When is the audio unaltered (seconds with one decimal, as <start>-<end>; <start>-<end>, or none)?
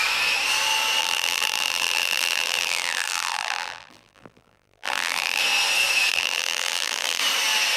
0.0-1.0; 5.4-6.1; 7.2-7.8